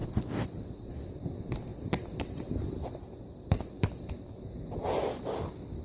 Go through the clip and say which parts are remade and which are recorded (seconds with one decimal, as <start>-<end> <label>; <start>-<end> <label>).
0.0-0.9 remade; 0.9-1.7 recorded; 1.7-4.1 remade; 4.1-5.8 recorded